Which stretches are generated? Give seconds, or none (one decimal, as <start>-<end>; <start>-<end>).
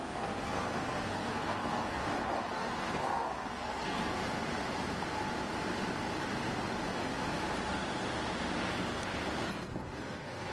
0.0-2.0; 2.5-4.2; 9.4-10.5